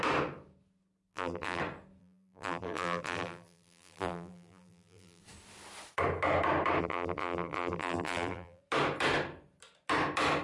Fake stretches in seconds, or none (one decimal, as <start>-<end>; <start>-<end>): 1.1-1.6; 2.0-5.2; 6.8-8.6